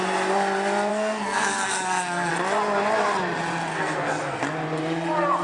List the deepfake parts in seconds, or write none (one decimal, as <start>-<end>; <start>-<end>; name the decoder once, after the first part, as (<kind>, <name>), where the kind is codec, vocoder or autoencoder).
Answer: 0.9-2.3 (codec, SNAC); 3.7-4.4